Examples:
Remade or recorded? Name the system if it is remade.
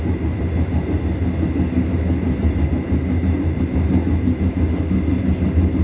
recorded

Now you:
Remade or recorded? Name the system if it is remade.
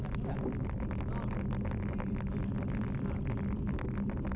recorded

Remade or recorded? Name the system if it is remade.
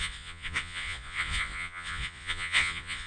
remade, vocoder, Vocos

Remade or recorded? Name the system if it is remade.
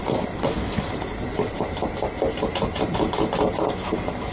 recorded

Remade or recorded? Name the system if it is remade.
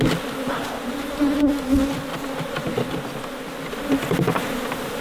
recorded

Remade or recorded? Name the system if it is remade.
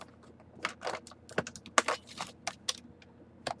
recorded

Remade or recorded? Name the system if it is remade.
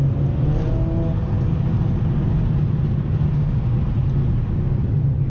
recorded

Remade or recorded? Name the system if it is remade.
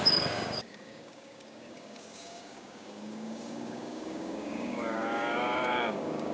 remade, codec, DAC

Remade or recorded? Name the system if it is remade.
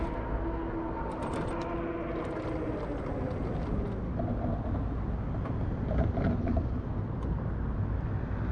recorded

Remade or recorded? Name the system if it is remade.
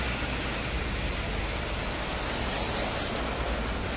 recorded